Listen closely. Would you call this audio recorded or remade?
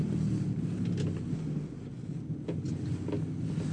recorded